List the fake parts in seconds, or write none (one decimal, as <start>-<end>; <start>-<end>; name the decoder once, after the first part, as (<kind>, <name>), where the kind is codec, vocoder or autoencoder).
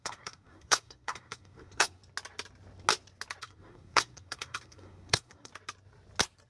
0.0-2.0 (codec, SNAC); 3.4-5.5